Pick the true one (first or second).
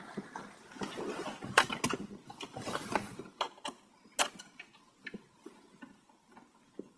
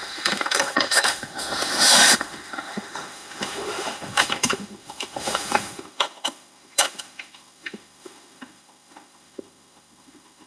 first